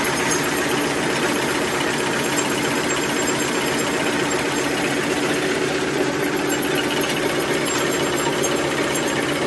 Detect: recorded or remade recorded